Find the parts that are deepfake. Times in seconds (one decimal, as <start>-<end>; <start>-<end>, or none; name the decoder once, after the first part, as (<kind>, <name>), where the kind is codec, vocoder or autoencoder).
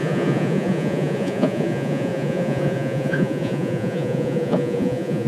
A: 0.0-5.3 (vocoder, Vocos)